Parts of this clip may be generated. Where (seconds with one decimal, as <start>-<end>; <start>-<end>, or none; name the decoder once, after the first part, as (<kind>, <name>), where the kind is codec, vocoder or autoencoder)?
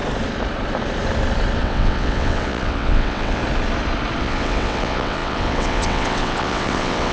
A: 1.6-3.4 (vocoder, WaveNeXt); 4.2-7.1